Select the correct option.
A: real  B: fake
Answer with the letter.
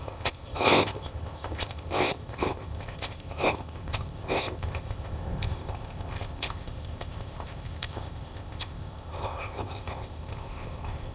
B